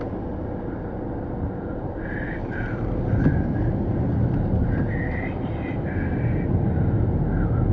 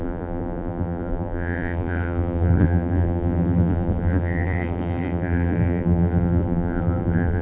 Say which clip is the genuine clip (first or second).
first